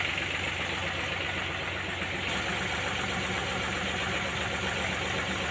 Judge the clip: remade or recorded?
recorded